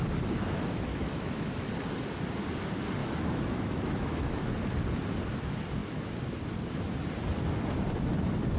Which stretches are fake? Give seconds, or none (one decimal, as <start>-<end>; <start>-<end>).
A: 0.9-1.7; 3.0-4.4

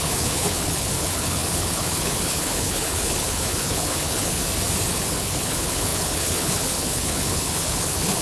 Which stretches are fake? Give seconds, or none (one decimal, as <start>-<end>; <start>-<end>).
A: 0.0-4.4; 4.9-8.2

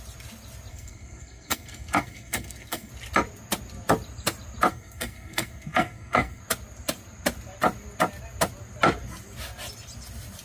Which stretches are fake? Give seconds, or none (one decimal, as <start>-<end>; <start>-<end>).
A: 0.7-2.9; 4.7-6.4

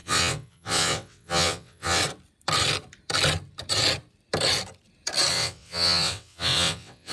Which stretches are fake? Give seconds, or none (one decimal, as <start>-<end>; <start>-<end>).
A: 0.0-2.0; 5.3-7.1

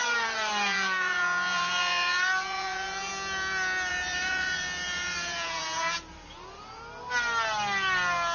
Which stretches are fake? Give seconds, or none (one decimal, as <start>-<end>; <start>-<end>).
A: 0.0-3.1; 3.9-6.8